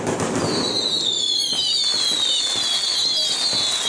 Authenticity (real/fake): real